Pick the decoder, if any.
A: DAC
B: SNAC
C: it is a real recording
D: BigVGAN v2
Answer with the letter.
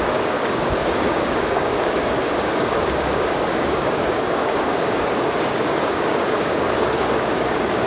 A